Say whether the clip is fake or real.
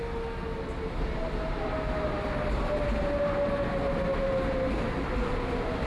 real